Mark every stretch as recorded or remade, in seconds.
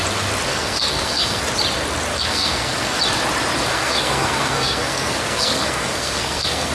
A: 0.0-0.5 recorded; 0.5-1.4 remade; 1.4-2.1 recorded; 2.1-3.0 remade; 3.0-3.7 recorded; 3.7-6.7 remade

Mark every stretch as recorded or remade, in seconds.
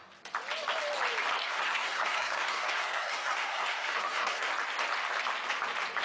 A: 0.0-1.4 recorded; 1.4-4.5 remade; 4.5-6.0 recorded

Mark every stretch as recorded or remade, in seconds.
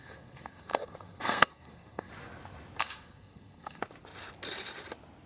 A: 0.0-2.1 remade; 2.1-2.8 recorded; 2.8-3.8 remade; 3.8-5.3 recorded